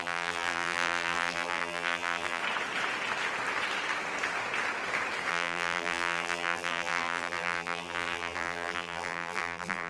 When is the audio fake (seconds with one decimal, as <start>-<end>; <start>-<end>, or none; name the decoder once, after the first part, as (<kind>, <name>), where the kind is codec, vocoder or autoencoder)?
0.0-2.4 (vocoder, BigVGAN v2); 5.3-9.9